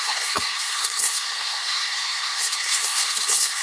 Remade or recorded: remade